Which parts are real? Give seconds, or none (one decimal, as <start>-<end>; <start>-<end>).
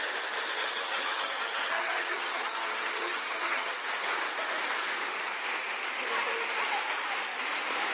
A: 0.0-0.5; 3.7-7.9